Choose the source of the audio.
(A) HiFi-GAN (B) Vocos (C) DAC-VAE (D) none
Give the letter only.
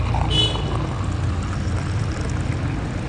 D